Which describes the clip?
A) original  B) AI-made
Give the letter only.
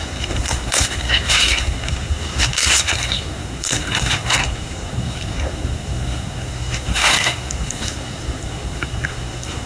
B